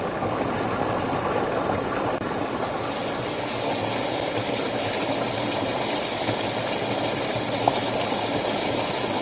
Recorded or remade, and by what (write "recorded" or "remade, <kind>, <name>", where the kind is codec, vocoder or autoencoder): recorded